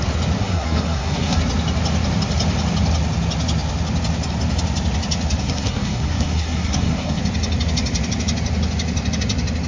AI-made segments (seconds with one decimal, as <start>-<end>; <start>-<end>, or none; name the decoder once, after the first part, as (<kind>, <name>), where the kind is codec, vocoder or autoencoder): 0.4-1.4 (codec, SNAC); 5.4-7.2